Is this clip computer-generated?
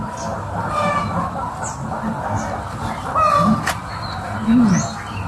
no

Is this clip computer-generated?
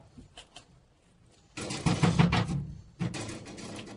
no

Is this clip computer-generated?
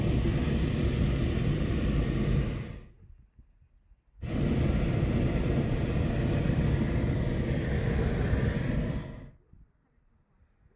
no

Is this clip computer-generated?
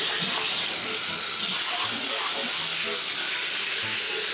no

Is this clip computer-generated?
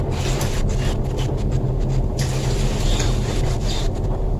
no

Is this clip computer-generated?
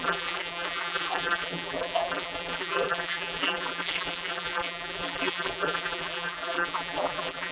yes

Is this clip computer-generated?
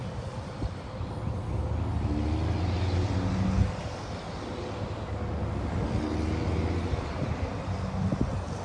no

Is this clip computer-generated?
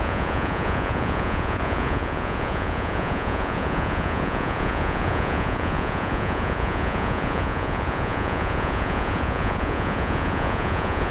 yes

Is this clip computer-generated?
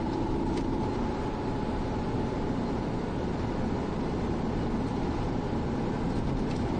no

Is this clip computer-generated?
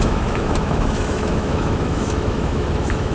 yes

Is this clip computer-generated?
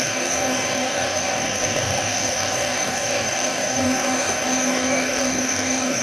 yes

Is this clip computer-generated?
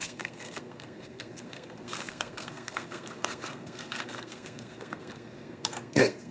yes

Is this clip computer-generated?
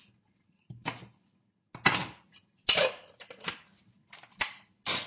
no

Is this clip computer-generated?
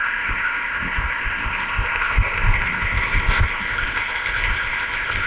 yes